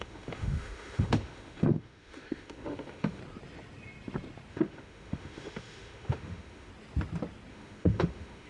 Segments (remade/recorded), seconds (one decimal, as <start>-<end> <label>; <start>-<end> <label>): 0.0-3.2 remade; 3.2-4.5 recorded; 4.5-6.7 remade; 6.7-7.5 recorded; 7.5-8.5 remade